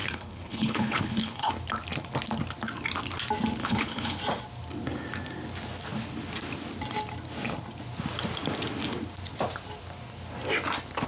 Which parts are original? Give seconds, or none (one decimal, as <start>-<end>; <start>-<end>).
1.5-3.6; 4.2-11.1